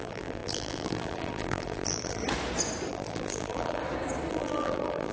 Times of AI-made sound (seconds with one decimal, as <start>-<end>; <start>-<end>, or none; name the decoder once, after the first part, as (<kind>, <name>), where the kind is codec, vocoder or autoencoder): 0.0-2.2 (vocoder, BigVGAN v2); 2.9-3.8; 4.3-5.1